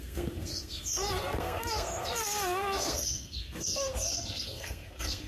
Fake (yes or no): yes